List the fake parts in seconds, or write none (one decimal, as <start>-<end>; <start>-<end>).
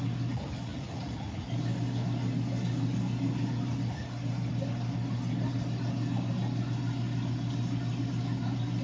none